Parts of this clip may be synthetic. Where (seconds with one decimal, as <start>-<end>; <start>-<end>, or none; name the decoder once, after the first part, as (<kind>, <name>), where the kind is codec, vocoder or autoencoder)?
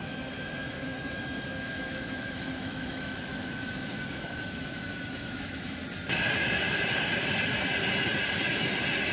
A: 0.0-5.8 (autoencoder, DAC-VAE)